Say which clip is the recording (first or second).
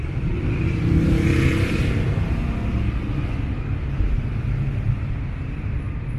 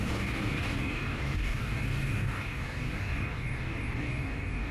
first